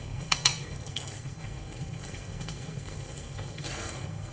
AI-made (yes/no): yes